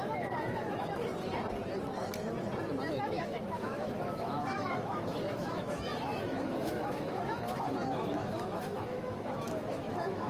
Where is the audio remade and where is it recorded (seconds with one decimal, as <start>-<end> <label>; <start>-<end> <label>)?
0.0-1.1 remade; 1.1-2.9 recorded; 2.9-10.3 remade